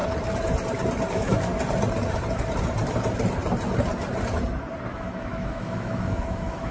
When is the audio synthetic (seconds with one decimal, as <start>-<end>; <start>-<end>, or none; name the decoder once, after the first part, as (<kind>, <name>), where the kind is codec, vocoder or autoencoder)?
1.1-1.5 (autoencoder, DAC-VAE); 4.9-6.7